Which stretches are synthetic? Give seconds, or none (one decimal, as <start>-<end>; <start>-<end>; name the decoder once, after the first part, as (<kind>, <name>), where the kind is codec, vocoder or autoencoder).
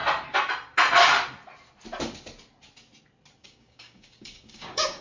3.4-5.0 (codec, DAC)